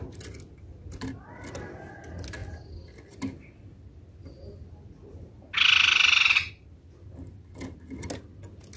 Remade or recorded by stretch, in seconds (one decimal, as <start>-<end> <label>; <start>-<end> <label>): 0.0-8.8 recorded